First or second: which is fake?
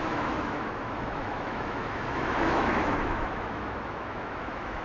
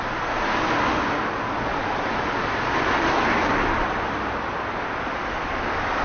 first